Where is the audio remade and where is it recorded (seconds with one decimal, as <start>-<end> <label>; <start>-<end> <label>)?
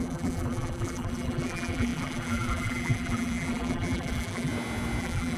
0.0-4.5 remade; 4.5-5.0 recorded; 5.0-5.4 remade